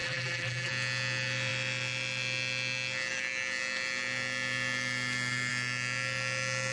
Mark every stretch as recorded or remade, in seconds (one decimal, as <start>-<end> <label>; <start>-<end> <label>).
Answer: 0.0-0.7 remade; 0.7-6.7 recorded

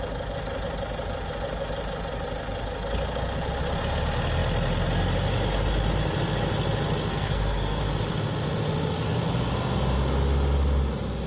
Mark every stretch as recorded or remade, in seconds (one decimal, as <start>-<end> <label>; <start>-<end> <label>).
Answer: 0.0-7.1 recorded; 7.1-7.8 remade; 7.8-11.3 recorded

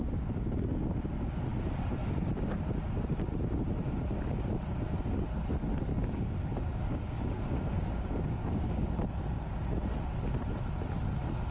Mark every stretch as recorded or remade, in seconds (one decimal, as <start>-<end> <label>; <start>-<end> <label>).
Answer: 0.0-5.9 recorded; 5.9-8.9 remade; 8.9-11.5 recorded

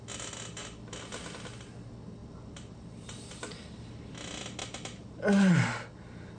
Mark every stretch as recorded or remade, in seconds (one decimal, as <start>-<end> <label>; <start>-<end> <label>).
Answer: 0.0-6.4 recorded

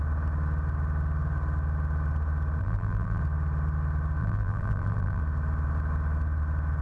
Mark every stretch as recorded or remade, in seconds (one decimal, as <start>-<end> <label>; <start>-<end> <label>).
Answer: 0.0-2.6 recorded; 2.6-3.2 remade; 3.2-4.2 recorded; 4.2-5.2 remade; 5.2-6.8 recorded